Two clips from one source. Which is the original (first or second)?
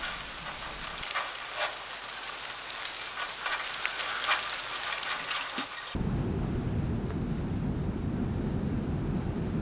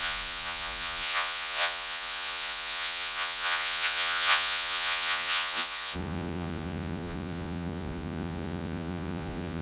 first